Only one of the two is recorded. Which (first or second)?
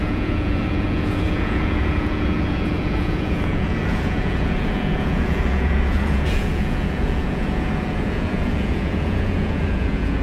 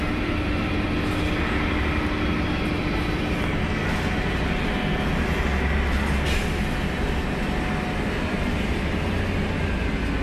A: second